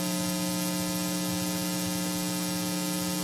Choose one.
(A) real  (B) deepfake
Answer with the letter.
A